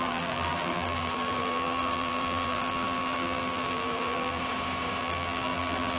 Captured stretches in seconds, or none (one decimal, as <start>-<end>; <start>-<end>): 4.4-5.0